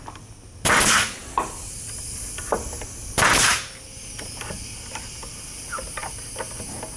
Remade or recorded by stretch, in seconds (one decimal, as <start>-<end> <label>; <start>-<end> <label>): 0.0-7.0 recorded